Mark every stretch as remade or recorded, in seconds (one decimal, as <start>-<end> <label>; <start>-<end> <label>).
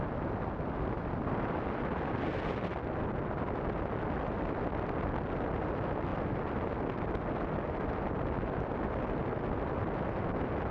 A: 0.0-10.7 recorded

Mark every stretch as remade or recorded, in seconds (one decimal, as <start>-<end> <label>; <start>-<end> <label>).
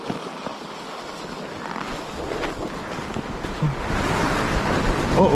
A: 0.0-5.3 recorded